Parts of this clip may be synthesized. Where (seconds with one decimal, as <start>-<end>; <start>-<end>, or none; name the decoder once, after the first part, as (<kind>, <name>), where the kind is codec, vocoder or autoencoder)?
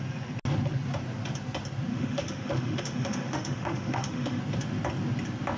1.9-4.4 (autoencoder, DAC-VAE)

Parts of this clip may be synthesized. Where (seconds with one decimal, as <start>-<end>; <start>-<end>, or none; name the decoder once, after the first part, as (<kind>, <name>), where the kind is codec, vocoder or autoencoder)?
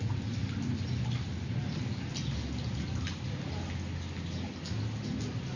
none